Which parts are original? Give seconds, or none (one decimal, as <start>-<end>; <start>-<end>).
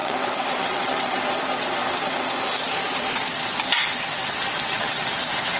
1.4-4.1; 5.1-5.6